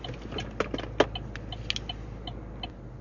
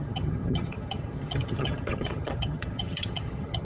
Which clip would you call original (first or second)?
first